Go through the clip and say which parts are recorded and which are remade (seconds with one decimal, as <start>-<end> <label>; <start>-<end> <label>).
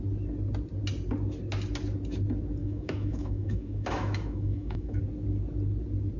0.0-2.6 recorded; 2.6-5.0 remade; 5.0-6.2 recorded